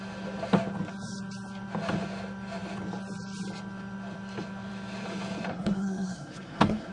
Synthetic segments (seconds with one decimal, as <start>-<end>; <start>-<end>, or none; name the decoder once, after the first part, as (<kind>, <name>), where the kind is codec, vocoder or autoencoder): 5.5-6.9 (codec, SNAC)